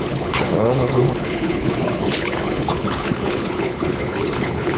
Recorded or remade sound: remade